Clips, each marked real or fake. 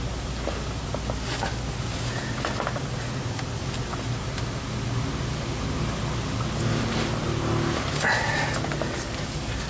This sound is real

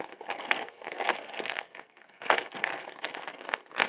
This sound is fake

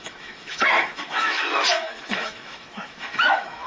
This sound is fake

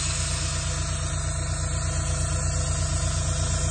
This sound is real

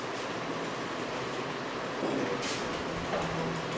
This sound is real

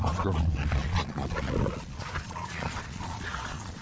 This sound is fake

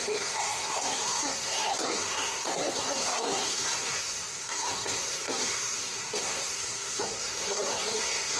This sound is fake